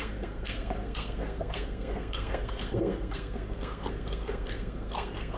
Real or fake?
fake